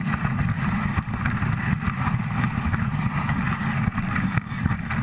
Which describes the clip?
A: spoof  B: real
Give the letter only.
B